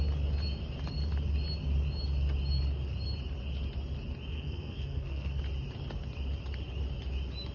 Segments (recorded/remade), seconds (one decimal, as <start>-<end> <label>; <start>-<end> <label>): 0.0-4.3 recorded; 4.3-5.4 remade; 5.4-7.5 recorded